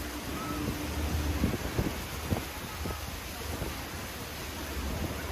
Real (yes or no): yes